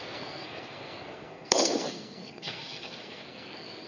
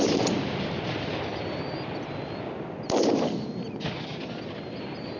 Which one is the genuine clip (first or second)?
second